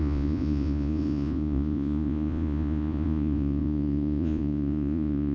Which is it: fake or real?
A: fake